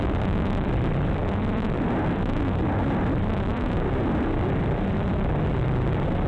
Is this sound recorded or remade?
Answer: remade